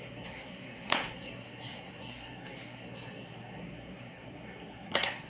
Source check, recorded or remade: remade